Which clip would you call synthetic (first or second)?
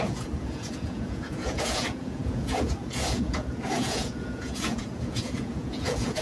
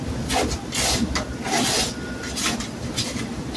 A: first